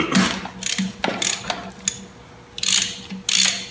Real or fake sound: real